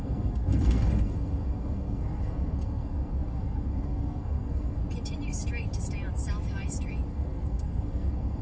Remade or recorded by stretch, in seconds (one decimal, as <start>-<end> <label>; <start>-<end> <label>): 0.0-4.8 remade; 4.8-7.1 recorded; 7.1-8.4 remade